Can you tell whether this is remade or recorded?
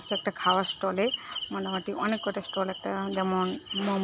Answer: recorded